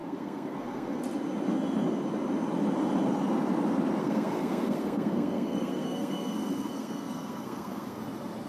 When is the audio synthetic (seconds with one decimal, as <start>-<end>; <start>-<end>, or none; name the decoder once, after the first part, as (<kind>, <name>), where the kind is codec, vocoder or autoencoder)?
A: 0.0-1.0 (codec, SNAC); 4.0-8.0